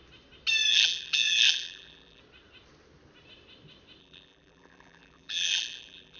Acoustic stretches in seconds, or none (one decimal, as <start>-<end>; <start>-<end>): 0.0-0.7; 2.2-4.0